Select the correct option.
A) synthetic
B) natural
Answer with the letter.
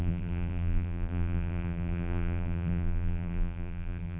A